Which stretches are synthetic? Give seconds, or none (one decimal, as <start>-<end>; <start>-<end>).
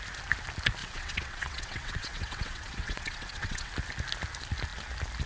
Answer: 0.8-3.7